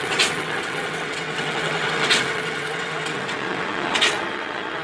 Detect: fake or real fake